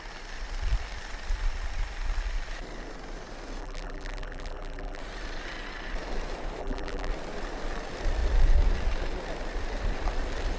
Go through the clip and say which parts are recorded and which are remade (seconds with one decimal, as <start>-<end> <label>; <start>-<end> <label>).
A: 0.0-3.6 recorded; 3.6-5.0 remade; 5.0-6.6 recorded; 6.6-7.1 remade; 7.1-10.6 recorded